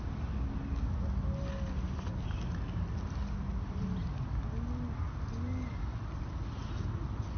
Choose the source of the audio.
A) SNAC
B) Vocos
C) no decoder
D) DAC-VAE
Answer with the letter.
C